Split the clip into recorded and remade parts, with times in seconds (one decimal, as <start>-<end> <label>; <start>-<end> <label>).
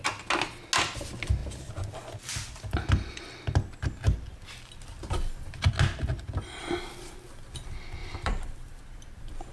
0.0-8.0 recorded; 8.0-8.8 remade; 8.8-9.5 recorded